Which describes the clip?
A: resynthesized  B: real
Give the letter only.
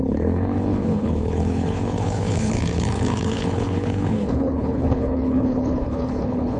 A